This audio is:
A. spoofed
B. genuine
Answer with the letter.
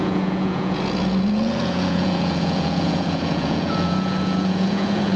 A